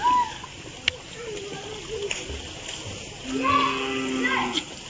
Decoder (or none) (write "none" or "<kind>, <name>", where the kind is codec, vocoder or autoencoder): none